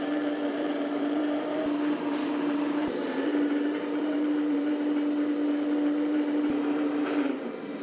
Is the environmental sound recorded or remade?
remade